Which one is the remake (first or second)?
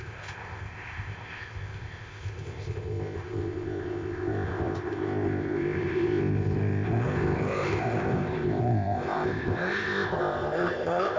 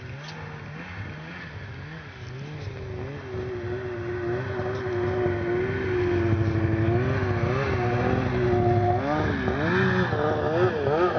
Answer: first